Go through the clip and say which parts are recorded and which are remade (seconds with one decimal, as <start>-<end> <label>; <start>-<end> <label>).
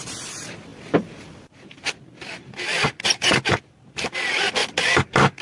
0.0-0.7 recorded; 0.7-3.9 remade; 3.9-4.6 recorded; 4.6-5.4 remade